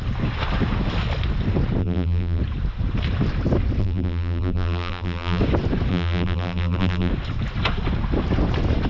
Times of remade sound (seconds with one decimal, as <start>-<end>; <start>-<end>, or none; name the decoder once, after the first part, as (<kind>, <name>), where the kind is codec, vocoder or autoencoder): 1.8-2.4 (vocoder, BigVGAN v2); 3.8-5.4; 5.9-7.1